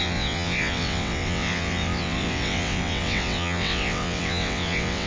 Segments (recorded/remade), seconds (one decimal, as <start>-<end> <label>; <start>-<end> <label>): 0.0-5.1 remade